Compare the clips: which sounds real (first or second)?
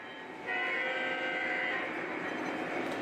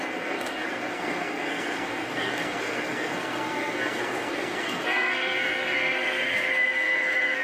first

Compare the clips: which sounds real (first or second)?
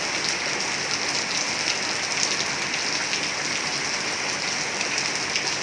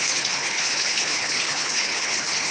first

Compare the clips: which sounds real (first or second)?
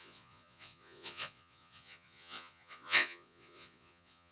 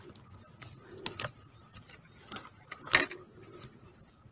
second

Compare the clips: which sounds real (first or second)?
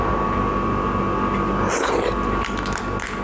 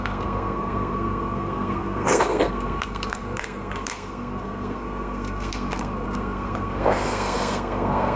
first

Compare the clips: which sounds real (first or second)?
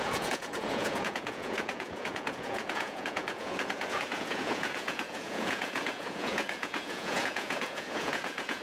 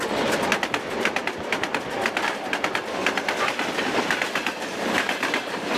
second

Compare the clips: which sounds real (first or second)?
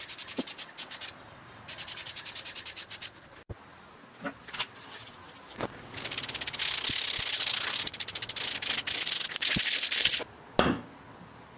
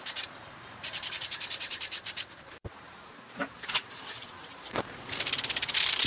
first